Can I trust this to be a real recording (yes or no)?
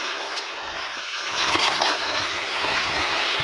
no